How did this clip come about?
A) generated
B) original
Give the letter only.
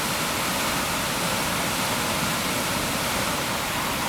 B